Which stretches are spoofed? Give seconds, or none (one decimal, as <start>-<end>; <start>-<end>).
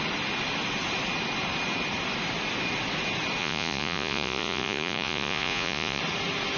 3.4-6.0